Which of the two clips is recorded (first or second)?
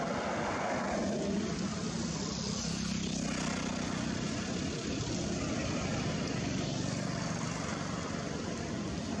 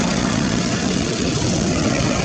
first